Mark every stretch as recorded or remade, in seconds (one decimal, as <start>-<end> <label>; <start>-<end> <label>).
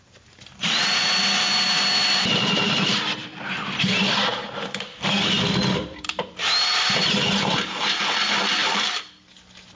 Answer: 0.0-3.2 recorded; 3.2-7.7 remade; 7.7-8.6 recorded; 8.6-9.2 remade; 9.2-9.8 recorded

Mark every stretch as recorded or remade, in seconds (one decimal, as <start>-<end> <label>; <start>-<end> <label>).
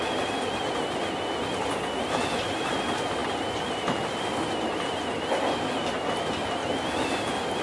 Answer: 0.0-7.6 recorded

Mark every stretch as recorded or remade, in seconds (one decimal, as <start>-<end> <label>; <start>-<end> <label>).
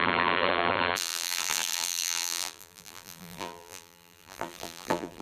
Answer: 0.0-5.2 remade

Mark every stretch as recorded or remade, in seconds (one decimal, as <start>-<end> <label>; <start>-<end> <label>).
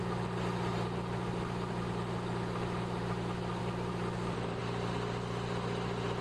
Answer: 0.0-6.2 recorded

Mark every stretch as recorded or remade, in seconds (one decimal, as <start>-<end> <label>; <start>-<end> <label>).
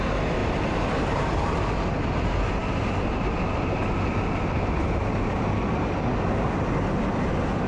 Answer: 0.0-0.4 recorded; 0.4-1.6 remade; 1.6-7.7 recorded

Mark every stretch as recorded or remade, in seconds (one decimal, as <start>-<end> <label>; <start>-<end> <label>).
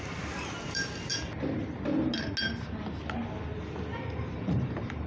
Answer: 0.0-1.1 remade; 1.1-4.2 recorded; 4.2-5.1 remade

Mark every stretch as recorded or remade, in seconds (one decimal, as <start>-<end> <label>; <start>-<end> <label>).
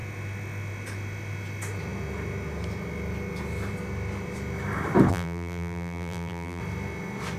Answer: 0.0-5.1 recorded; 5.1-6.6 remade; 6.6-7.4 recorded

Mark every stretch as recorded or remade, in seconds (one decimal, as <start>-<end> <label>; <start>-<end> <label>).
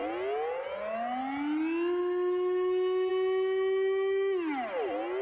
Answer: 0.0-5.2 recorded